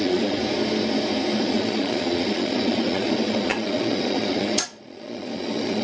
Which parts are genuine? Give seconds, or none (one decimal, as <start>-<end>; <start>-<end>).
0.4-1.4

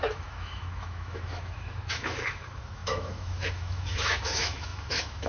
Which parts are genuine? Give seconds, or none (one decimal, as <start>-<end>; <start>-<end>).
none

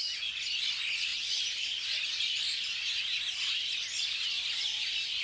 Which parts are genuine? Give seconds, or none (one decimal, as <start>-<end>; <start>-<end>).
0.0-5.2

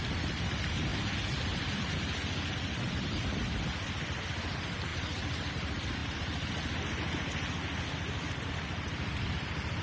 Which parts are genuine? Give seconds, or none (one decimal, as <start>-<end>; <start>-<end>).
0.9-2.5; 6.0-8.5

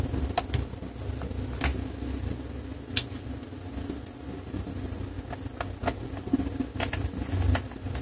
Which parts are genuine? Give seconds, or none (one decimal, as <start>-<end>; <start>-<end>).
0.0-8.0